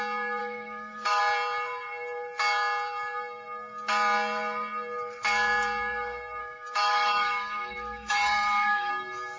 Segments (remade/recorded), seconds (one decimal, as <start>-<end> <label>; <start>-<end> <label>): 0.0-0.4 recorded; 0.4-1.2 remade; 1.2-6.4 recorded; 6.4-8.9 remade; 8.9-9.4 recorded